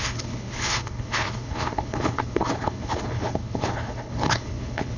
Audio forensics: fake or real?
fake